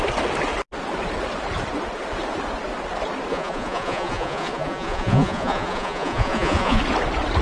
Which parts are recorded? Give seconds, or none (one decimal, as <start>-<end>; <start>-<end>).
0.0-3.3; 6.8-7.4

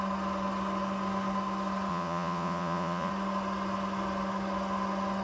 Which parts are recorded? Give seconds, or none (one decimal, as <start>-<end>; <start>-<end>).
0.0-1.9; 3.1-5.2

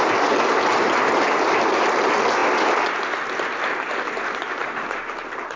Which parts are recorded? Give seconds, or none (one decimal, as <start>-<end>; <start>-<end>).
0.0-5.6

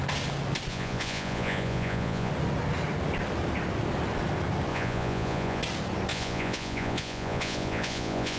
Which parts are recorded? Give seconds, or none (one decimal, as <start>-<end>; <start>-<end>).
0.0-0.7; 2.3-4.7; 5.6-6.1